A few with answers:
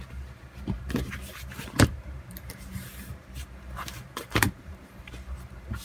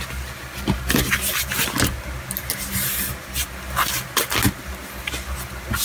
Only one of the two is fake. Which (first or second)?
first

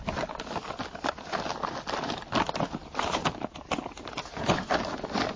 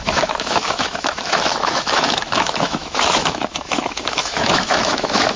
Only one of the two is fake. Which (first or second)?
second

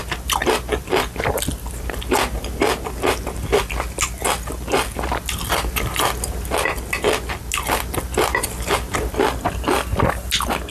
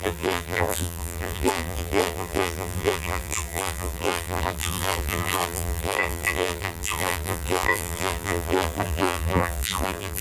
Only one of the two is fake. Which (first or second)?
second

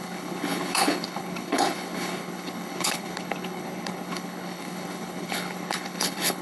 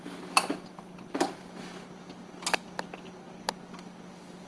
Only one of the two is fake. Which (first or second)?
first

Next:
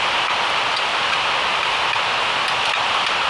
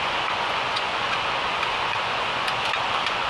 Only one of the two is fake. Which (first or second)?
second